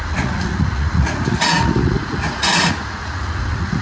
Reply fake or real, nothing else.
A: fake